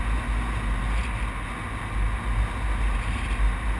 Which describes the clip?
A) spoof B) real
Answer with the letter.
B